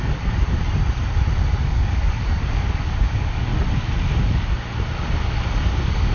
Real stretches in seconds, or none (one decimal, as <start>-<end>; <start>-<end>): 0.6-1.6; 3.5-5.6